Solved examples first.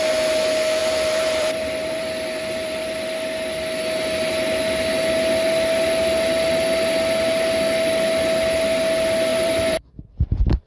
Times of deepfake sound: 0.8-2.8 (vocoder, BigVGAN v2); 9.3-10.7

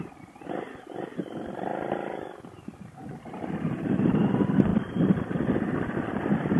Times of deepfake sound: 4.7-5.3 (vocoder, BigVGAN v2)

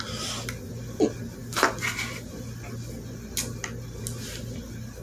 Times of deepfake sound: none

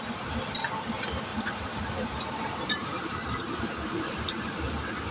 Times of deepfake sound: 1.3-4.4 (vocoder, BigVGAN v2)

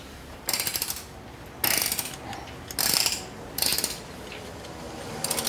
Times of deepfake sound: 0.0-0.7 (vocoder, BigVGAN v2); 2.8-3.7

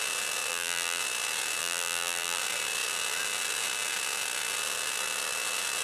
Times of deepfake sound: 0.5-1.0 (vocoder, BigVGAN v2); 1.6-2.4